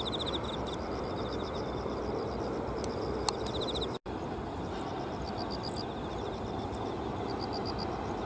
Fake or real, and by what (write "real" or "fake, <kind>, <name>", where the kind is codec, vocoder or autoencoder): real